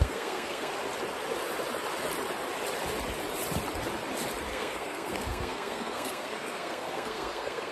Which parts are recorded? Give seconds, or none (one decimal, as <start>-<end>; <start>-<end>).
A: 0.7-4.5